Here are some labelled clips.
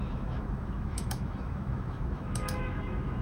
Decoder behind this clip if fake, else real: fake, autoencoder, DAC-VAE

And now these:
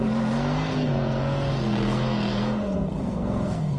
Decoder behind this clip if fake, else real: fake, codec, SNAC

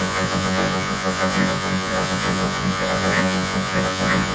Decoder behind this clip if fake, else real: fake, vocoder, Vocos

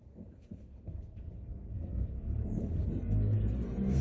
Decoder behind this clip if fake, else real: fake, codec, SNAC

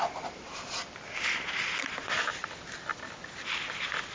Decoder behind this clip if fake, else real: real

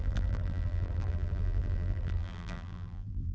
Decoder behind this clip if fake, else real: fake, vocoder, BigVGAN v2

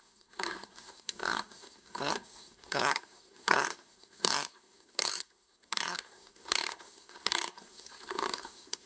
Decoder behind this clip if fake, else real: fake, codec, SNAC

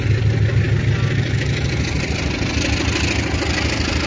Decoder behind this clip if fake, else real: real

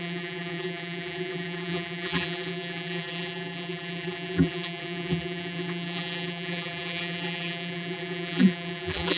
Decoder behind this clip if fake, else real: fake, vocoder, BigVGAN v2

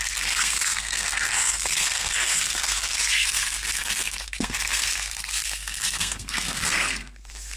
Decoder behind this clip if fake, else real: fake, codec, SNAC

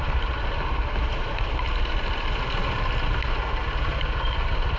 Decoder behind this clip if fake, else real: real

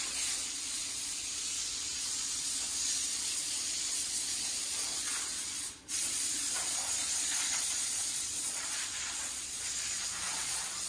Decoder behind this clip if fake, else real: fake, vocoder, Vocos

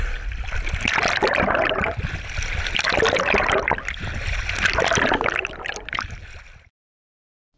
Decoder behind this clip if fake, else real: real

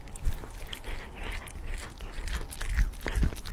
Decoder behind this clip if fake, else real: real